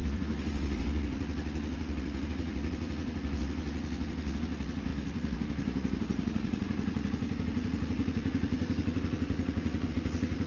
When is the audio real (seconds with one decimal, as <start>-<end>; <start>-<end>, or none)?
none